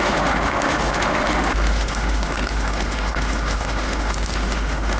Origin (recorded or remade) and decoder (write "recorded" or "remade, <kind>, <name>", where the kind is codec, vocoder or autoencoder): remade, autoencoder, DAC-VAE